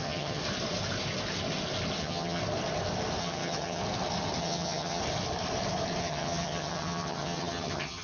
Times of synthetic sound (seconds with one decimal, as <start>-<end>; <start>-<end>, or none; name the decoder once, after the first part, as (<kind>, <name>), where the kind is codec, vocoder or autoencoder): 0.0-0.4 (vocoder, HiFi-GAN); 2.0-2.4; 3.2-3.8; 4.4-5.0; 6.0-8.0